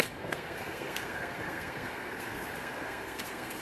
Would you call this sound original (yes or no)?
no